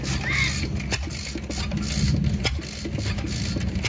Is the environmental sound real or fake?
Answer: real